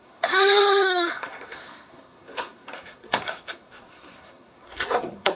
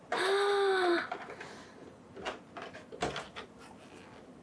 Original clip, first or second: second